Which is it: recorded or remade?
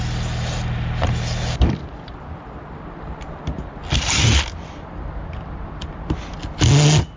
recorded